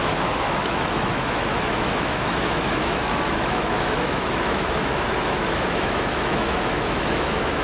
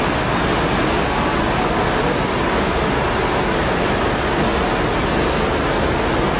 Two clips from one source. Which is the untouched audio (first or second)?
second